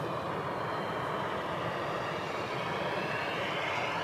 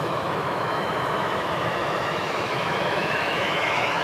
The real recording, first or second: first